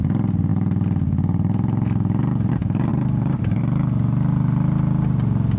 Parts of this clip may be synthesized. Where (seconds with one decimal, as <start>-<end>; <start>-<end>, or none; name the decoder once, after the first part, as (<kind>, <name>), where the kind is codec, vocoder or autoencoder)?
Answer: 0.5-2.5 (vocoder, BigVGAN v2); 2.9-3.6